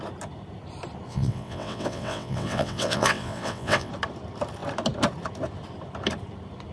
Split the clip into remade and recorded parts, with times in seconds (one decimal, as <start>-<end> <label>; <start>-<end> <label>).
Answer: 0.0-1.1 recorded; 1.1-3.9 remade; 3.9-6.7 recorded